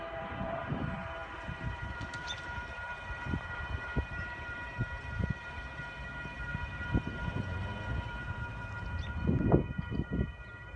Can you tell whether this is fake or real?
fake